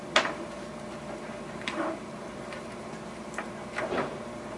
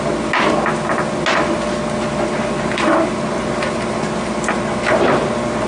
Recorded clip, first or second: second